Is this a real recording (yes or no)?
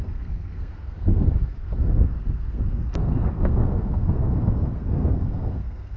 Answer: no